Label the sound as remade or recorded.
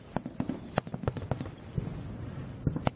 recorded